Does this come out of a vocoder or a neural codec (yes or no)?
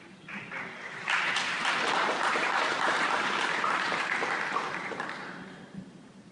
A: yes